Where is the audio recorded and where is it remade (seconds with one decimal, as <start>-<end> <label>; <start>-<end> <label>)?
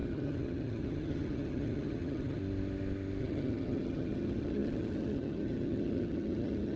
0.0-2.4 remade; 2.4-3.2 recorded; 3.2-6.8 remade